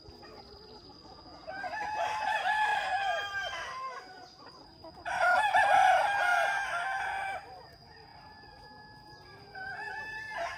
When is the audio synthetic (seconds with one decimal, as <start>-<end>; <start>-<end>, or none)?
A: 2.7-3.4